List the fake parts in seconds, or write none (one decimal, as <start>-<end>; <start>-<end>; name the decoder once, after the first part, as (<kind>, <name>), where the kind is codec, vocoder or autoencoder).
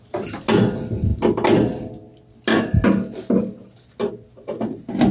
none